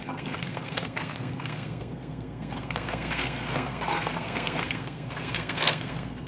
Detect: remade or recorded remade